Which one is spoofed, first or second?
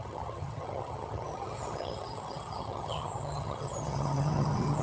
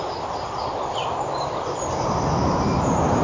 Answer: first